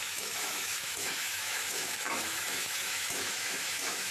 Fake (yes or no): yes